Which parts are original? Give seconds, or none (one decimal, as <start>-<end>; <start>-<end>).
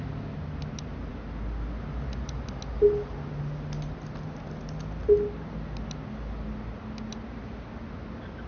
0.0-8.5